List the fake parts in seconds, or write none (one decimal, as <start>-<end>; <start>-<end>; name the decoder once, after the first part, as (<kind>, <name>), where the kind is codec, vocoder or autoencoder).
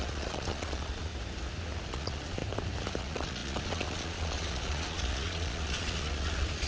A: 0.0-1.1 (vocoder, Vocos); 1.9-2.4; 3.0-6.7